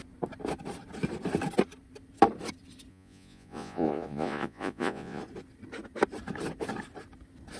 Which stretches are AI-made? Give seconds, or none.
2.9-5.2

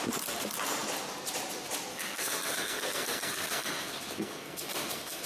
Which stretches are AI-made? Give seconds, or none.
1.9-5.3

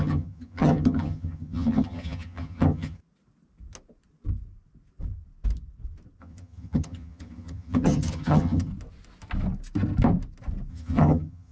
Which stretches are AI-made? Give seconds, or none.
0.0-3.0; 6.2-8.7; 10.7-11.5

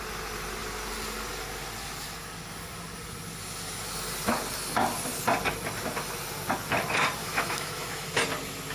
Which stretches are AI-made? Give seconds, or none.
7.2-8.2

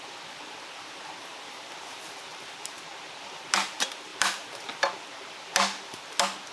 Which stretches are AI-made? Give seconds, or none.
2.3-2.9

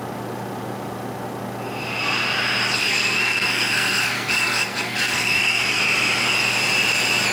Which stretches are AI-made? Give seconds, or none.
2.8-5.8

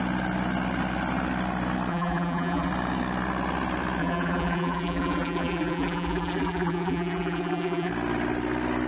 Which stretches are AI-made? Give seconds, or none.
1.9-2.7; 4.0-7.9